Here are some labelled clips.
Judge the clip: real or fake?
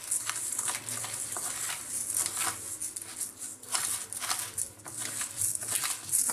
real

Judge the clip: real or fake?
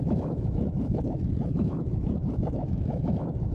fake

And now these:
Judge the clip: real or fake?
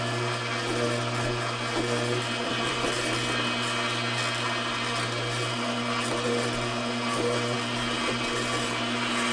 real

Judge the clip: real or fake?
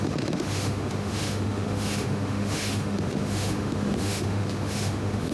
fake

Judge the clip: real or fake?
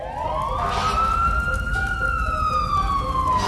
real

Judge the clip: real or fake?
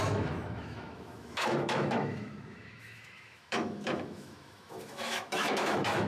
fake